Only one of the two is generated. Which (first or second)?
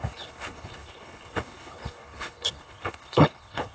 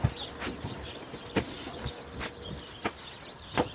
first